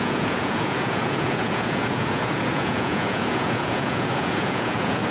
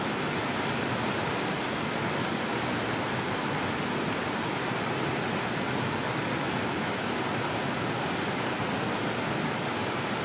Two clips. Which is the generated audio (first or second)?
first